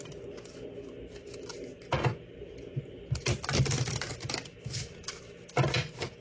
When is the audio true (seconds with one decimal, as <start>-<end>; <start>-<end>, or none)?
0.0-6.2